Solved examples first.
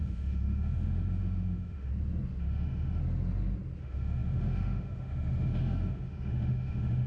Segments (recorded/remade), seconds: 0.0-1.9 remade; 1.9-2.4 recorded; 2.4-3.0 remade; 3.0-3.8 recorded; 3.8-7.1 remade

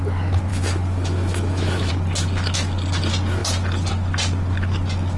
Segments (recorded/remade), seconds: 0.0-0.5 recorded; 0.5-1.9 remade; 1.9-5.2 recorded

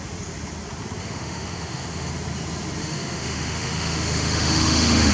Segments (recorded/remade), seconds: 0.0-1.0 recorded; 1.0-2.1 remade; 2.1-2.8 recorded; 2.8-5.1 remade